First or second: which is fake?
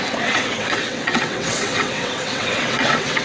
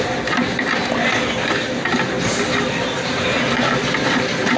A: first